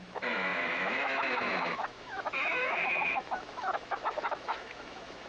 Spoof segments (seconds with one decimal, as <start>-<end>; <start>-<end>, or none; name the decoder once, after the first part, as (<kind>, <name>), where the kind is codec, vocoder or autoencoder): 0.0-5.3 (autoencoder, DAC-VAE)